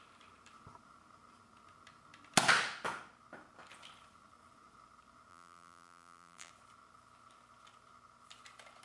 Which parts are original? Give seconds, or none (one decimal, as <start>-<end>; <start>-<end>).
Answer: 0.0-5.3; 6.5-8.8